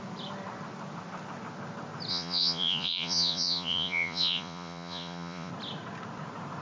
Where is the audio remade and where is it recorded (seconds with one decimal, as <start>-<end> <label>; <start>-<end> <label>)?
0.0-2.1 recorded; 2.1-5.5 remade; 5.5-6.6 recorded